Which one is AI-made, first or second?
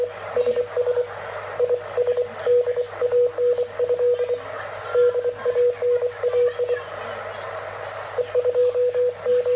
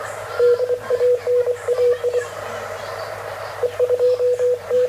second